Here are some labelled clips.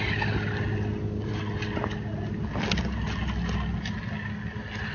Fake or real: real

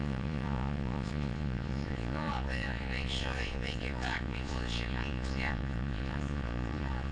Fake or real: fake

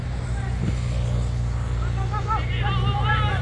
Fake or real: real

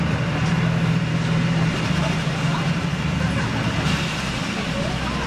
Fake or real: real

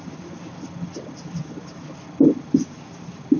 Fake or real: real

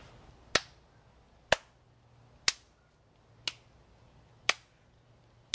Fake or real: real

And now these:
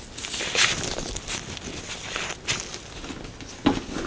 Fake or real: real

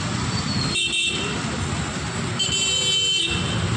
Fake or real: real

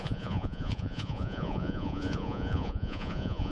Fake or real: fake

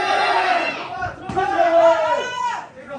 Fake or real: fake